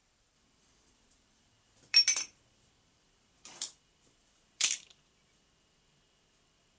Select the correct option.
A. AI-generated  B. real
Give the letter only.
A